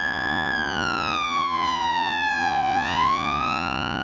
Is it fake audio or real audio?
fake